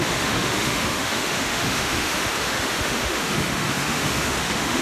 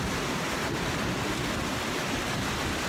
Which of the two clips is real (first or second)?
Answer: second